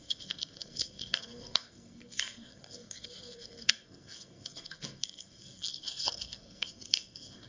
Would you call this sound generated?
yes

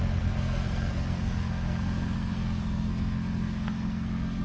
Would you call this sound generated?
yes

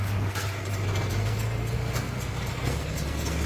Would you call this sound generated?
yes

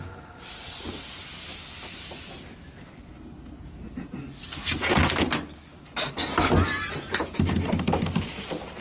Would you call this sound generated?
no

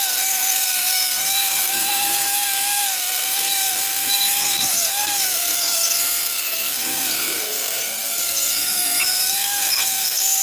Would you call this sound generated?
yes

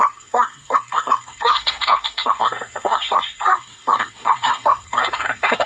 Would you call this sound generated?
yes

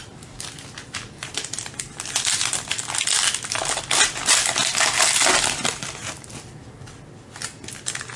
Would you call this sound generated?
no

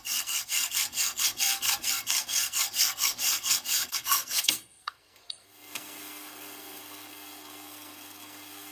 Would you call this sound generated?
yes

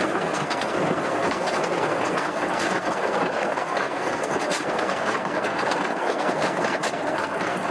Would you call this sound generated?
yes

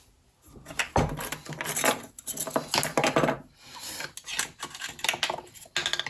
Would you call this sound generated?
no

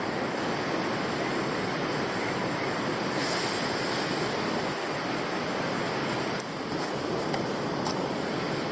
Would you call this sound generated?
no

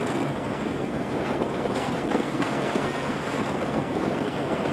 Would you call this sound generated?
yes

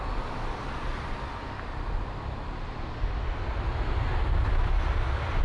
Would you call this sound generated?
no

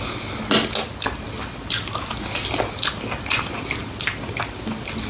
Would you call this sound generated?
no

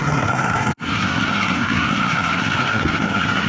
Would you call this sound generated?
yes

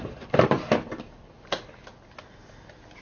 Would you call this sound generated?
no